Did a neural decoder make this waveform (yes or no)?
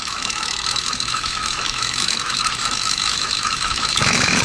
yes